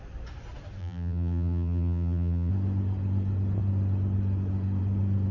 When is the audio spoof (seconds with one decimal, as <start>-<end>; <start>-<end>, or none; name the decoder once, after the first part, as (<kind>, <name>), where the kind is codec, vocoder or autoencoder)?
0.8-2.5 (vocoder, BigVGAN v2)